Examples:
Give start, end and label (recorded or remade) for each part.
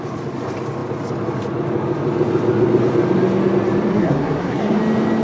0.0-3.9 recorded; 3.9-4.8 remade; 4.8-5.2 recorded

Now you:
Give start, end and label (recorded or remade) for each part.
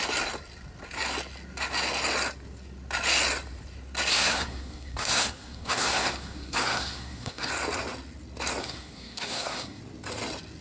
0.0-4.1 recorded; 4.1-7.5 remade; 7.5-8.6 recorded; 8.6-9.8 remade; 9.8-10.6 recorded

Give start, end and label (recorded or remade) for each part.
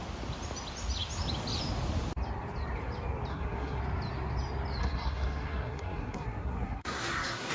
0.0-3.3 recorded; 3.3-3.8 remade; 3.8-4.8 recorded; 4.8-7.5 remade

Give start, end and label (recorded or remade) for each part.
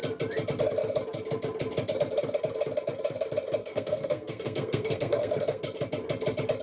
0.0-3.6 recorded; 3.6-5.6 remade; 5.6-6.6 recorded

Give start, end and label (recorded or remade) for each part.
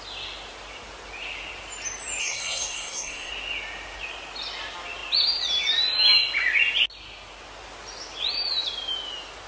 0.0-2.2 recorded; 2.2-3.3 remade; 3.3-9.5 recorded